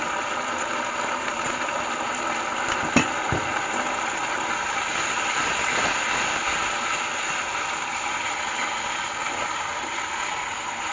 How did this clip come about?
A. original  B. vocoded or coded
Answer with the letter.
A